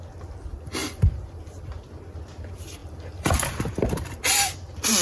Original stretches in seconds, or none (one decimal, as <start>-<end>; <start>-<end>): 0.0-2.8; 4.2-5.0